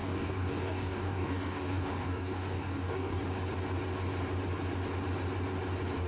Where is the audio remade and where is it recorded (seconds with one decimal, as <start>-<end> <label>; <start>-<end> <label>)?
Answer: 0.0-3.2 remade; 3.2-6.1 recorded